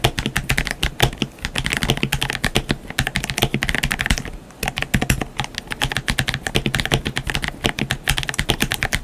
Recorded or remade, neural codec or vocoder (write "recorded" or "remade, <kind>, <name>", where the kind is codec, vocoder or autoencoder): recorded